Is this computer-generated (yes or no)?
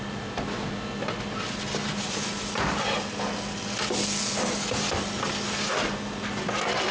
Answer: no